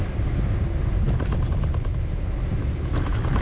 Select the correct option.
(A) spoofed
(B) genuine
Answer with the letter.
B